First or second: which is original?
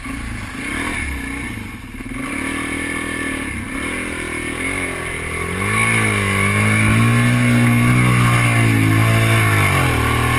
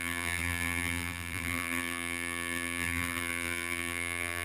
first